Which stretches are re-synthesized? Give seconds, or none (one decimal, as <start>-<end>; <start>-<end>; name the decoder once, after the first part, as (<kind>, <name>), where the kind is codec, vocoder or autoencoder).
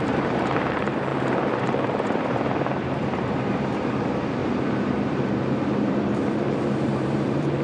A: 0.0-7.6 (vocoder, BigVGAN v2)